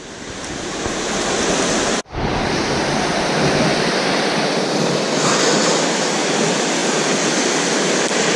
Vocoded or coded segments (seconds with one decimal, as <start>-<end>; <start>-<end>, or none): none